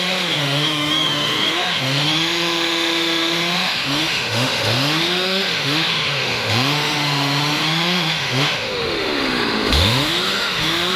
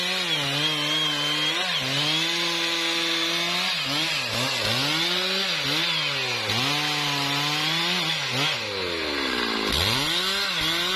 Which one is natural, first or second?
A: second